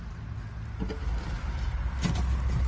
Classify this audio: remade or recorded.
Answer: recorded